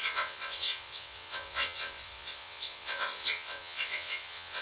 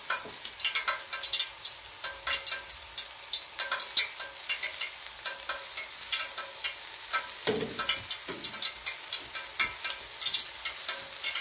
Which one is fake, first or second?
first